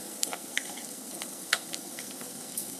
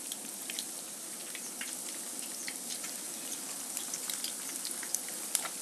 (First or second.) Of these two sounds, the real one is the second